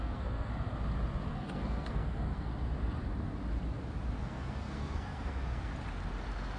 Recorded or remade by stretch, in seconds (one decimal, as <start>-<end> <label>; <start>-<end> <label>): 0.0-0.5 remade; 0.5-1.3 recorded; 1.3-2.5 remade; 2.5-4.2 recorded; 4.2-5.7 remade; 5.7-6.6 recorded